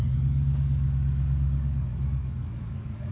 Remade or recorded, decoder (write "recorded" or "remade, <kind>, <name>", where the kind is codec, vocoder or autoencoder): remade, codec, DAC